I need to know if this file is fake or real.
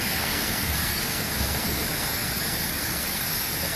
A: fake